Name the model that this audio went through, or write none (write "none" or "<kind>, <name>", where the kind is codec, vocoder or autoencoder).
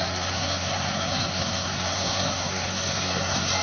codec, SNAC